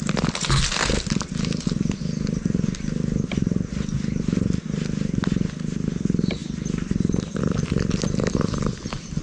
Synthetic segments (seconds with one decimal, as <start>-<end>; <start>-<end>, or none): none